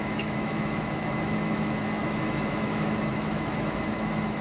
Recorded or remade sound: remade